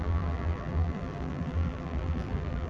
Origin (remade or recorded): remade